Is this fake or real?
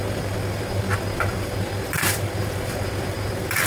fake